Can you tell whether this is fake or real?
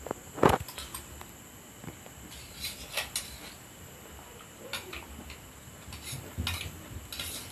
real